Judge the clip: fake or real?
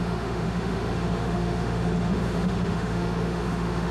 fake